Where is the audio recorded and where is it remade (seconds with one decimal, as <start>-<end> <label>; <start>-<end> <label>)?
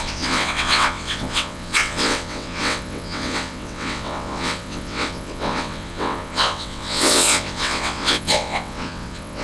0.0-9.4 remade